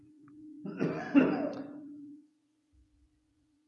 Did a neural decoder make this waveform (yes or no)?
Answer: yes